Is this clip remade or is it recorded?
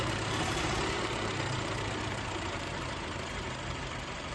remade